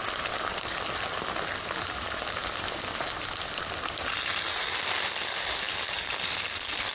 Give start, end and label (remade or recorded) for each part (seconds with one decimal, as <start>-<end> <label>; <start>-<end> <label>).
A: 0.0-6.9 recorded